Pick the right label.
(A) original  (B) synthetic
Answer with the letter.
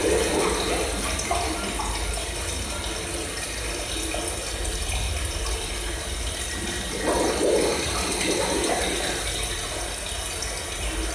A